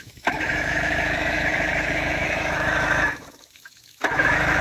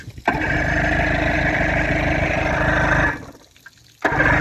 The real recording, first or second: second